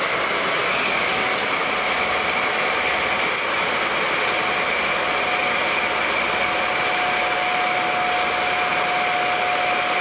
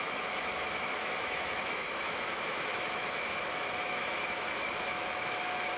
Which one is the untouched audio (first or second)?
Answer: first